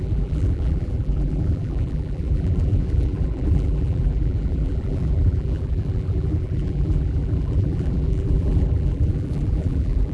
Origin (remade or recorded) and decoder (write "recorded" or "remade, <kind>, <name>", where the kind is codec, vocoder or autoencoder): remade, vocoder, BigVGAN v2